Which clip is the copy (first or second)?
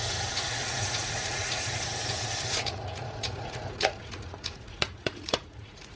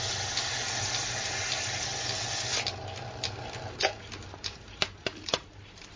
first